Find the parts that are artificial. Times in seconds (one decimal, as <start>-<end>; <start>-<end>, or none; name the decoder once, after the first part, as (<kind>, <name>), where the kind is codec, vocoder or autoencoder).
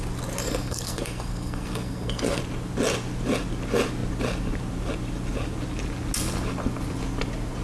0.6-2.4 (codec, SNAC)